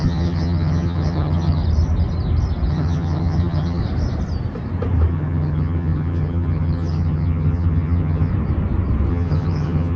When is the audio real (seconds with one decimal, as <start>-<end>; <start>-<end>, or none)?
1.6-2.7; 3.8-5.1; 8.3-9.1